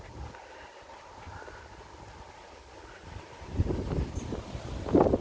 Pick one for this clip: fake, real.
real